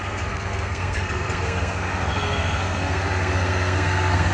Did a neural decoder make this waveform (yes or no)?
yes